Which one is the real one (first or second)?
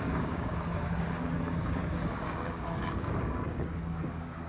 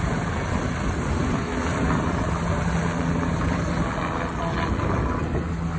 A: second